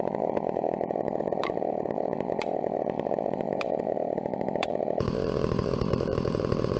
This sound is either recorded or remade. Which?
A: remade